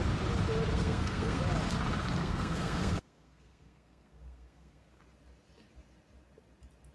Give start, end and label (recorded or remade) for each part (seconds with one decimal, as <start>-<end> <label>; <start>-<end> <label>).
0.0-0.7 recorded; 0.7-1.4 remade; 1.4-2.2 recorded; 2.2-5.0 remade; 5.0-6.9 recorded